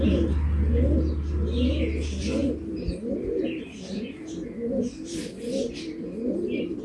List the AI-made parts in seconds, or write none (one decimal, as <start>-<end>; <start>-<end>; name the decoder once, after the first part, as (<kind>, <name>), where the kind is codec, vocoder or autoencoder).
none